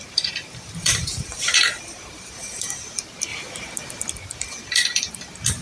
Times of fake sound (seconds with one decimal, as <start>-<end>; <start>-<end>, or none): 0.0-3.3; 4.1-5.6